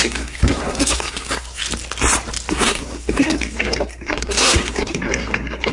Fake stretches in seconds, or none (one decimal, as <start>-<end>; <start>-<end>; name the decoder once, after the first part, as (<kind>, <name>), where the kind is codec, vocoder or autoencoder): 0.0-1.6 (codec, SNAC); 2.5-5.7